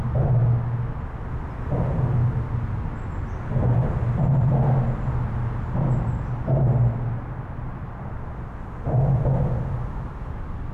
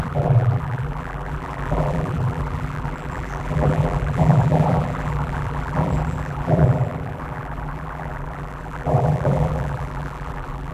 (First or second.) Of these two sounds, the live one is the first